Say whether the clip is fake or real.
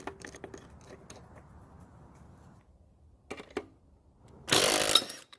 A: real